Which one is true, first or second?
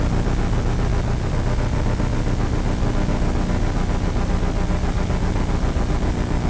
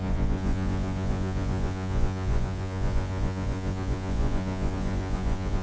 first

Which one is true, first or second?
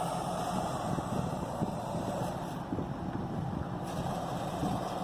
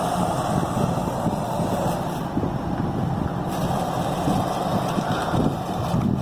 second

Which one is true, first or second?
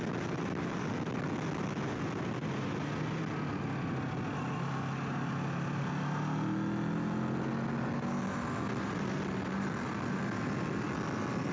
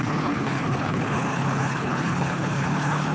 first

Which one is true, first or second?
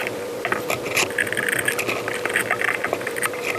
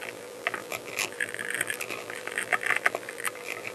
first